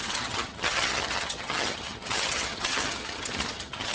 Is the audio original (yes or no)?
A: no